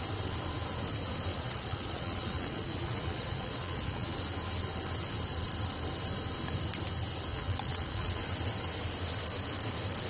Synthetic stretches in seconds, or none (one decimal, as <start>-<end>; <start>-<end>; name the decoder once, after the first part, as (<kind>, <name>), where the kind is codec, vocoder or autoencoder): 1.3-4.2 (vocoder, Vocos); 7.3-8.2